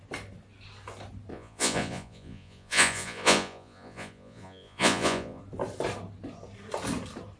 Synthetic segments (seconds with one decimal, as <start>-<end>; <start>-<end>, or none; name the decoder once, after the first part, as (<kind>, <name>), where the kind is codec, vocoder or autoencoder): 1.3-5.4 (vocoder, Vocos)